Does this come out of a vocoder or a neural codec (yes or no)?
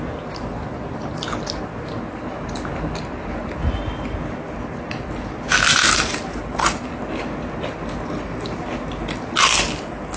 no